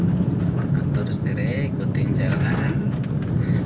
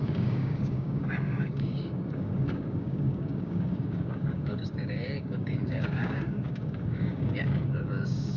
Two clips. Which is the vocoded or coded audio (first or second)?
second